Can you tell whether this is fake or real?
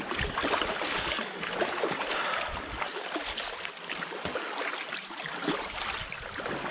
real